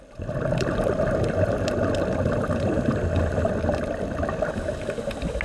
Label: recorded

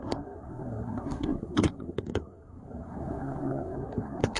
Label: remade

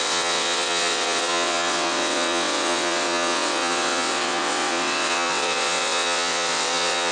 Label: remade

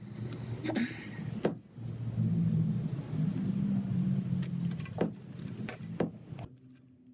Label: recorded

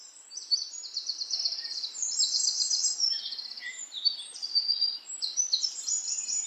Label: remade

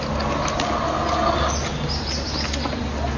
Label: recorded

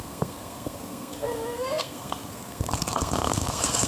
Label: remade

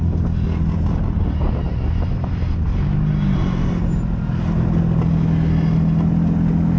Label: recorded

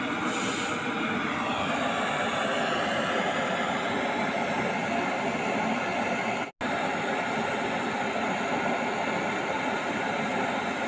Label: recorded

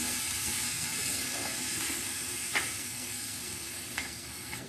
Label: remade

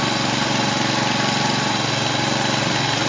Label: recorded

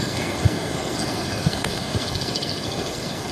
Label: remade